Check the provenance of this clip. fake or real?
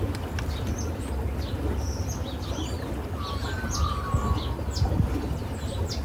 real